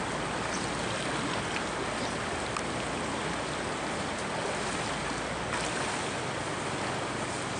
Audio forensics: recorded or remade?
recorded